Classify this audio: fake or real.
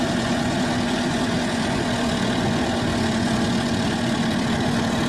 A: fake